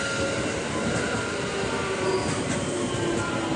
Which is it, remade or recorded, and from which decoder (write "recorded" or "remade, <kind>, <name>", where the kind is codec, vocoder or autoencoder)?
recorded